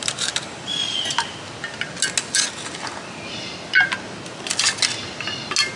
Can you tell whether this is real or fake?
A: real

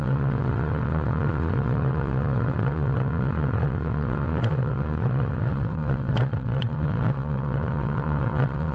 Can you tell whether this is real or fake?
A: fake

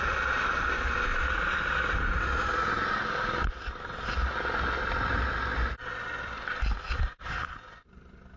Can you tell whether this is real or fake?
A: real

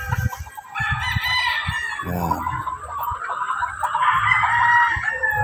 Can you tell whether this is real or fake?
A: real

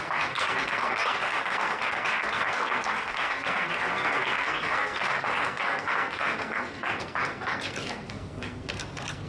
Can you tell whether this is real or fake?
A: fake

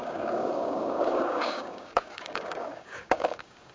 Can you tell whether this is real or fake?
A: fake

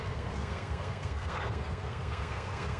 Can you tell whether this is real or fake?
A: fake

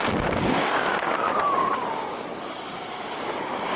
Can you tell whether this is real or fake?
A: fake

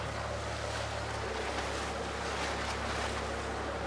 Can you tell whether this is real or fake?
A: real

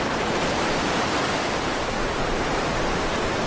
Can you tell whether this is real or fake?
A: fake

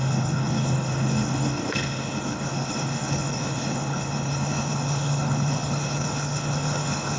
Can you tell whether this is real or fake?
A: fake